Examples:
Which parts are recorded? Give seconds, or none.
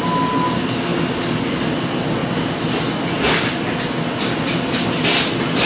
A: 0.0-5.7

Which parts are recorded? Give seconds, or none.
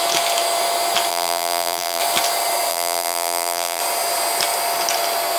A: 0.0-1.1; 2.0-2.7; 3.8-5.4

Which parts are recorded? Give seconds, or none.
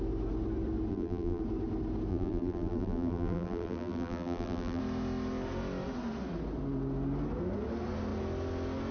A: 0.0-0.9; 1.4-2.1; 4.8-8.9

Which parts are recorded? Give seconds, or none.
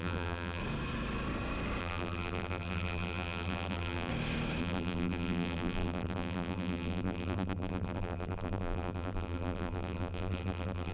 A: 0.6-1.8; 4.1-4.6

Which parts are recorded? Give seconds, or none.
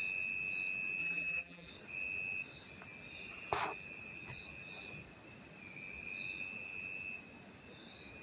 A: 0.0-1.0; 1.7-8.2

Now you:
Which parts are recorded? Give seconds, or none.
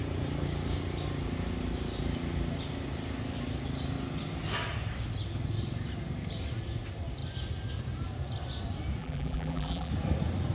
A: 0.0-9.0; 9.9-10.5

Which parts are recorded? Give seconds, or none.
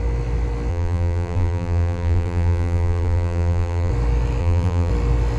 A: 0.0-0.7; 3.9-4.4; 4.9-5.4